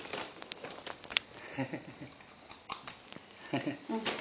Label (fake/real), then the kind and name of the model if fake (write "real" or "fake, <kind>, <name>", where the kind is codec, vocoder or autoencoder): real